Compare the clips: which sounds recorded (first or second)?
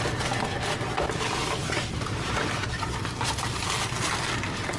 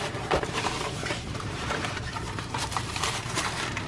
first